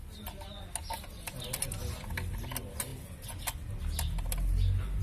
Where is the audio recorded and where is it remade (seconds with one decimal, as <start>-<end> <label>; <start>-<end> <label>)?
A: 0.0-5.0 recorded